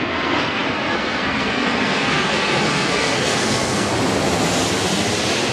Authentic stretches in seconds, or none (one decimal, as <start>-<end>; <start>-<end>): 3.9-5.5